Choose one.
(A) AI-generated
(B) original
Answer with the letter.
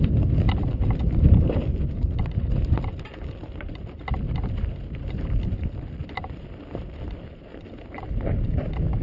B